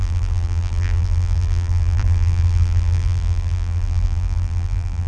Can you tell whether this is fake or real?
fake